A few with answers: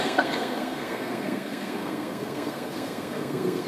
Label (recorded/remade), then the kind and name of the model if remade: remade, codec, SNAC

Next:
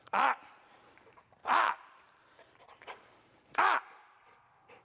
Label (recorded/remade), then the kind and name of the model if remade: remade, vocoder, BigVGAN v2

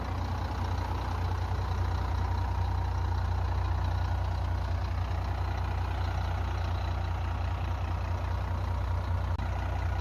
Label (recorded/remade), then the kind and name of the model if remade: recorded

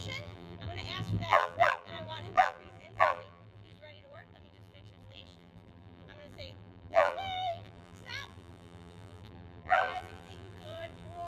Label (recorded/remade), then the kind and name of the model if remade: remade, vocoder, BigVGAN v2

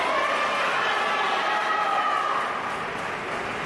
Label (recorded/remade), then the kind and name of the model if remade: recorded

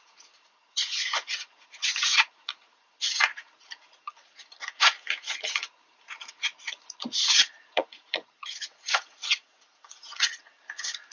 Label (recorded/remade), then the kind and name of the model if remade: remade, vocoder, Vocos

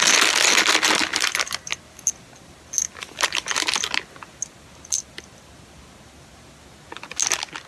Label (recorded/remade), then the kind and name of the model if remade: recorded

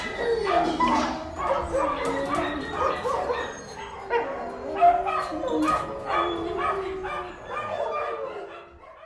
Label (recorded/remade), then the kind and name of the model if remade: recorded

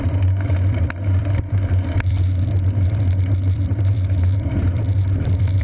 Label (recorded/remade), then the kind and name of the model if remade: remade, vocoder, BigVGAN v2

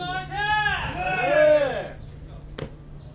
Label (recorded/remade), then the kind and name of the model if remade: recorded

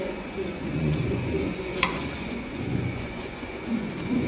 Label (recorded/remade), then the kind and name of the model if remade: remade, vocoder, Vocos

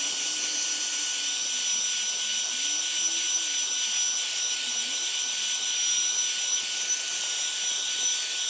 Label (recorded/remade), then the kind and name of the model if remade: recorded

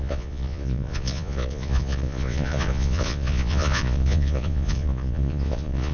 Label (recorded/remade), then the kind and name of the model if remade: remade, vocoder, Vocos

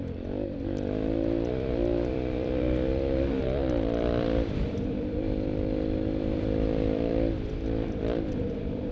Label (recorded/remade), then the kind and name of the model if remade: remade, vocoder, BigVGAN v2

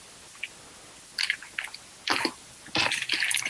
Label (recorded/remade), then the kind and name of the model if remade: recorded